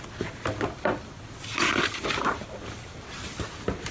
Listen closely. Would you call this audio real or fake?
real